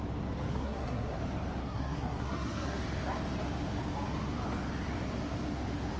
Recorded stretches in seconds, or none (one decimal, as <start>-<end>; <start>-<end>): 0.0-0.5; 1.2-1.6; 2.8-6.0